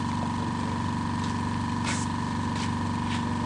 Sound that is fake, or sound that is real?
real